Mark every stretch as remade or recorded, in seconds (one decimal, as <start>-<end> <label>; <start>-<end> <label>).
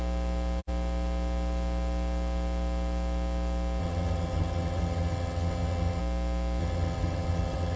0.0-3.8 recorded; 3.8-6.0 remade; 6.0-6.6 recorded; 6.6-7.8 remade